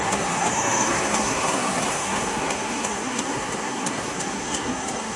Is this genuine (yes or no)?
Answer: no